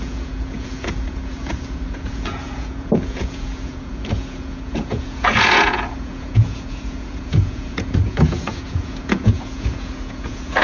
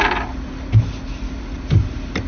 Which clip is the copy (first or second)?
first